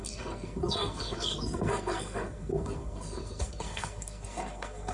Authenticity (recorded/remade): remade